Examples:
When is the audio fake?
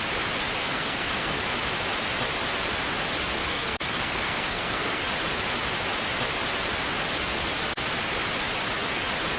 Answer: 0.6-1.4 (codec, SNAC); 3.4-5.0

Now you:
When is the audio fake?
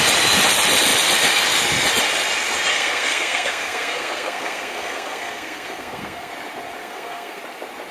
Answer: 2.7-6.3 (codec, SNAC); 6.8-7.4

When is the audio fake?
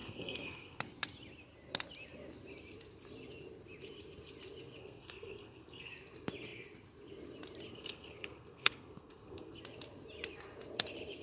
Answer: 0.0-0.8 (codec, SNAC); 4.8-5.9; 7.7-9.6